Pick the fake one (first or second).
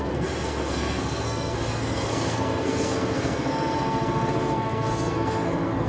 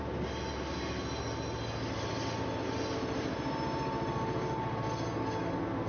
first